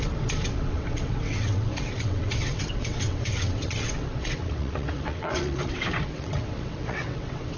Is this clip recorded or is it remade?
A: remade